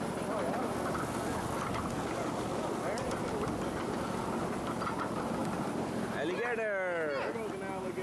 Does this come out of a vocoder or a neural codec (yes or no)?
no